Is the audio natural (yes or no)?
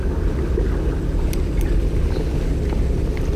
yes